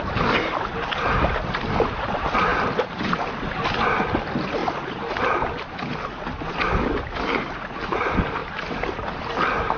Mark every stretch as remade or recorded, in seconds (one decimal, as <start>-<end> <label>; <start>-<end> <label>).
0.0-2.5 recorded; 2.5-3.1 remade; 3.1-8.4 recorded; 8.4-9.2 remade; 9.2-9.8 recorded